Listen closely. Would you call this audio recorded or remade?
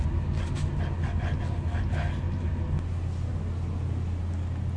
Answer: recorded